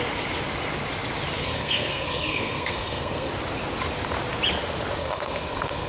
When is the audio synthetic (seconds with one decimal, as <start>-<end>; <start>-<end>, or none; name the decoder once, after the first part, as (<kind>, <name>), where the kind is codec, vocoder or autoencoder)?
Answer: 1.4-3.3 (codec, SNAC); 5.0-5.9